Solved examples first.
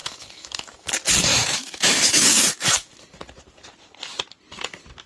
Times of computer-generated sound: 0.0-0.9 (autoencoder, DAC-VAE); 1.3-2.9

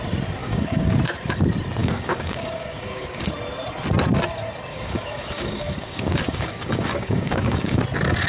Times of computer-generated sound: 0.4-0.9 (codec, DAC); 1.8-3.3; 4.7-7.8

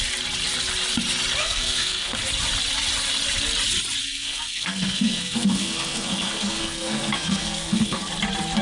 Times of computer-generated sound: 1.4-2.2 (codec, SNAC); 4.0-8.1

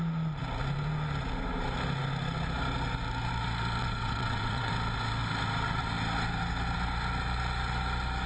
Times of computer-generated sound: 3.8-4.7 (vocoder, WaveNeXt)